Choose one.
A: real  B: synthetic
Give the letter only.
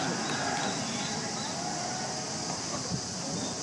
A